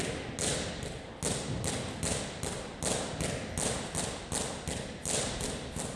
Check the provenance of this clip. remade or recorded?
recorded